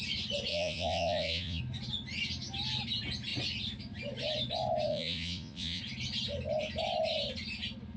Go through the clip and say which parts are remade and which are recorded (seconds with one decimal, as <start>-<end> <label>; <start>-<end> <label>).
0.0-0.5 recorded; 0.5-1.6 remade; 1.6-4.9 recorded; 4.9-5.8 remade; 5.8-8.0 recorded